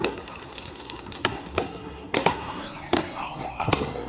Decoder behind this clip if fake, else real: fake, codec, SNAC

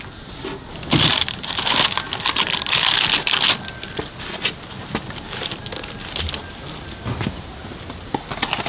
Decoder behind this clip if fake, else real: real